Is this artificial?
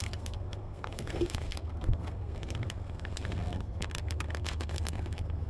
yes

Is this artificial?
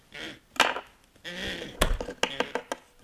no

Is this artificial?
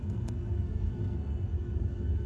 yes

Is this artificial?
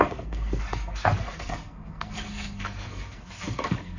yes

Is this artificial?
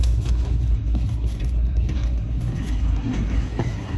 yes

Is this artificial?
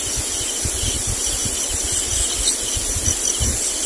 no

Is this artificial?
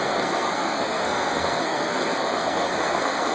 yes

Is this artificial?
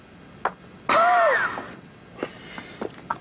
no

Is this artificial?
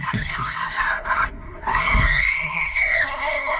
yes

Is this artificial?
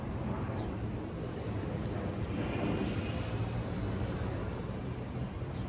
no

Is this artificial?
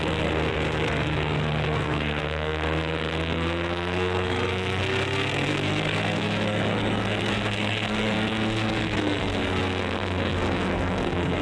yes